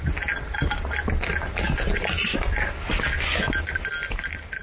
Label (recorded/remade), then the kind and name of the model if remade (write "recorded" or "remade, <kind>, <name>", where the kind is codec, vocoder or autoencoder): recorded